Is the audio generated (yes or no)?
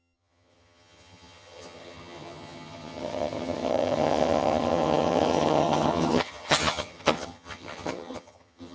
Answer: yes